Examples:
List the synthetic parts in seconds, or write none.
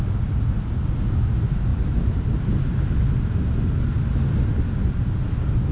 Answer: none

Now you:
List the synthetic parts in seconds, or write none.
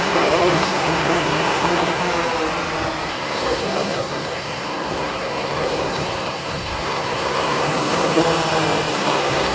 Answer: 0.0-2.0; 3.1-8.2; 8.9-9.5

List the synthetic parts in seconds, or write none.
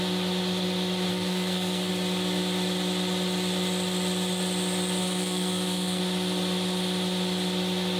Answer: 1.1-1.9; 5.0-6.0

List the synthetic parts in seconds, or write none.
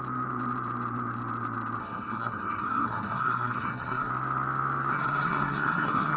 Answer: 1.8-4.1; 4.9-6.2